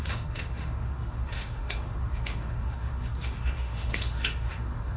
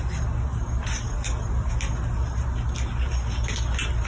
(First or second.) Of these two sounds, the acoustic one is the second